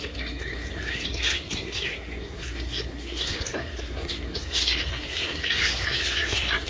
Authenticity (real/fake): fake